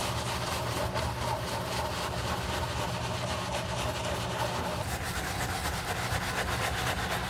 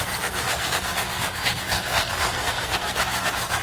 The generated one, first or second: second